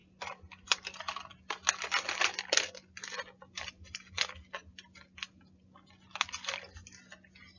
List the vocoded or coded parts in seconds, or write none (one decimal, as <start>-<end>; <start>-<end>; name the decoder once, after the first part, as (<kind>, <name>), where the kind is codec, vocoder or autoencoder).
none